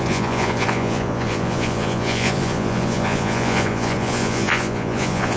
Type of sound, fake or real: fake